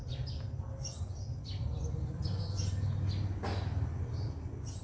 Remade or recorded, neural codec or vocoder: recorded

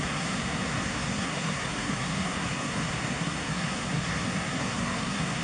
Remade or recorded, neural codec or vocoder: remade, codec, SNAC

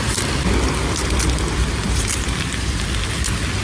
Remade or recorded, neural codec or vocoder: recorded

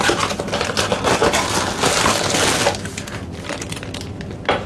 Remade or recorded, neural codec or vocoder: recorded